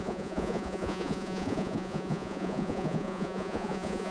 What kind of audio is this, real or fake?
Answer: fake